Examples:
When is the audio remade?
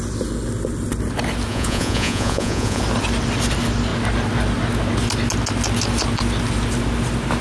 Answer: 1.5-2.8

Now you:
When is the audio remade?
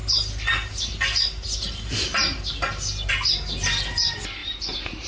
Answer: 4.4-5.1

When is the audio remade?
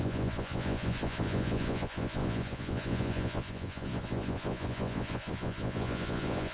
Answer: 0.0-6.5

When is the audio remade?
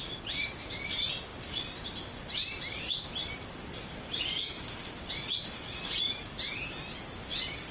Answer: none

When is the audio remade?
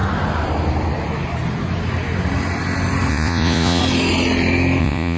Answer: 3.1-3.8; 4.8-5.2